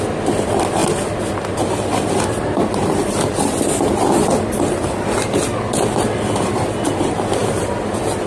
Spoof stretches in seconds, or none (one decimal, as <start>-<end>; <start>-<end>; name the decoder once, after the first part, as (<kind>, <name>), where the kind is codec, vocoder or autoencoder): none